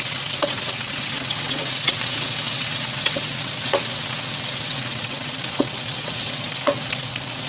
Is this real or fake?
fake